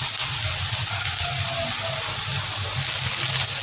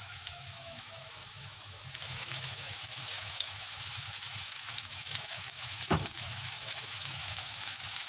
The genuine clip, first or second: first